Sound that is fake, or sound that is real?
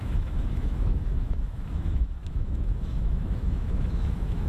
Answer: fake